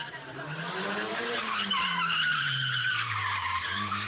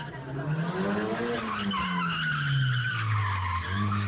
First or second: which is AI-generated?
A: first